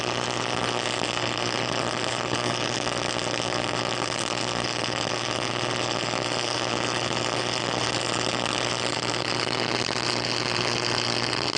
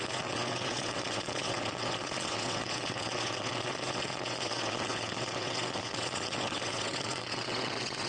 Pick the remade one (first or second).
second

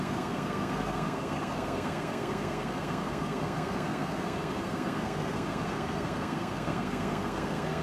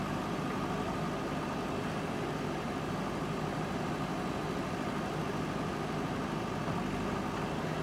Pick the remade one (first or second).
first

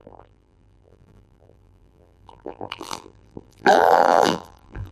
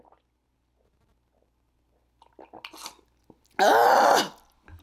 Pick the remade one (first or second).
first